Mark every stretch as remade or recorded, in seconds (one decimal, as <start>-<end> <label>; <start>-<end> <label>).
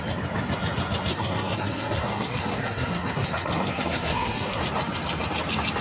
0.0-1.1 recorded; 1.1-4.6 remade; 4.6-5.8 recorded